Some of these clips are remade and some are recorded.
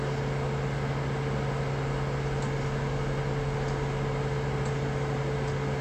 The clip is recorded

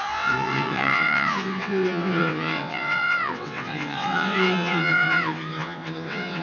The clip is remade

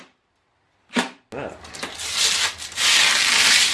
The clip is recorded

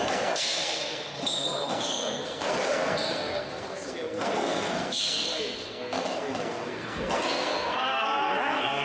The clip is remade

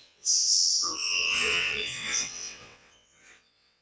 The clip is remade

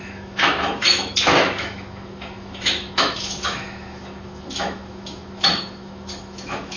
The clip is remade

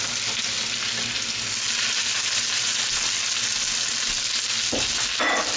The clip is recorded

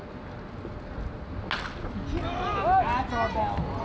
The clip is recorded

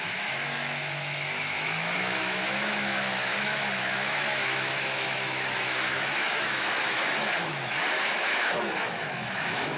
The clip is remade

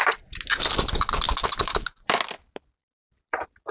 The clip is recorded